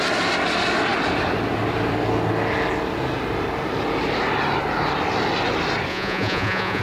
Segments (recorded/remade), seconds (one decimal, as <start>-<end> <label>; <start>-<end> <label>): 0.0-5.9 recorded; 5.9-6.8 remade